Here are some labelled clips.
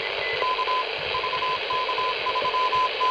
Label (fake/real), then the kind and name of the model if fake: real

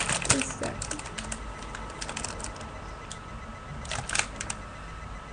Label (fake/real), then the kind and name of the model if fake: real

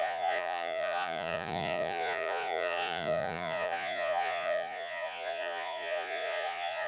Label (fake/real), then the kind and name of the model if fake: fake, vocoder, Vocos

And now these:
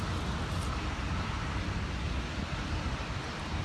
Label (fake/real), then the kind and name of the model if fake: real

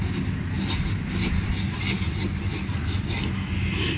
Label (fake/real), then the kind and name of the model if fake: real